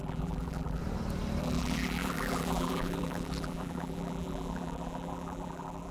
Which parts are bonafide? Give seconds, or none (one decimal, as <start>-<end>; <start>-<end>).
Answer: 0.8-1.4